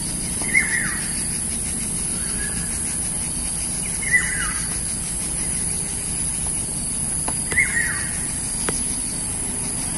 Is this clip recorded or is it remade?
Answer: recorded